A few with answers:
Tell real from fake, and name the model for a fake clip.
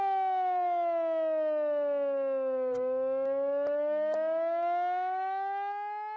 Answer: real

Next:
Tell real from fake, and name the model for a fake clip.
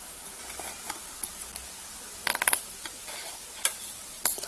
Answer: real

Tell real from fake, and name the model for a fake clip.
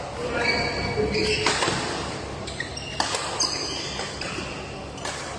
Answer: real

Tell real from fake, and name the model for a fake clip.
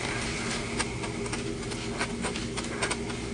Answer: real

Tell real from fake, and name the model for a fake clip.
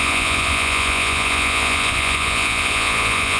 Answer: fake, vocoder, Vocos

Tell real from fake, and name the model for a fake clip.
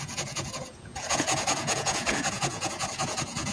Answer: fake, vocoder, Vocos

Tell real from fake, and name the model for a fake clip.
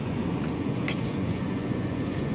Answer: fake, vocoder, Vocos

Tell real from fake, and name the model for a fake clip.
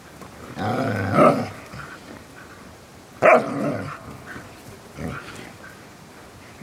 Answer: real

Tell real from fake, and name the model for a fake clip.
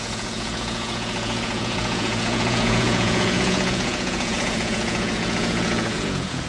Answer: fake, vocoder, Vocos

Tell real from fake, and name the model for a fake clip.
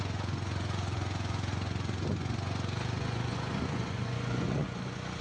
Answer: fake, vocoder, Vocos